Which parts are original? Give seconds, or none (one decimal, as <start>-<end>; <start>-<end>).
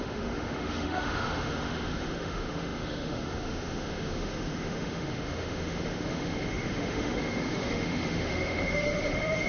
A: none